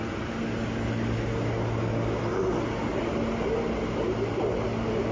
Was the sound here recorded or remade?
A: recorded